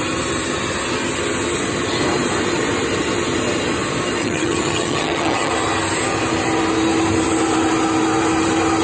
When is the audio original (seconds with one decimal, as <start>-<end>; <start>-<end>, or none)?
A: 0.0-4.2; 5.5-8.8